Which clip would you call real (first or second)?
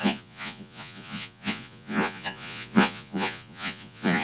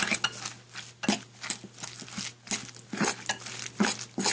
second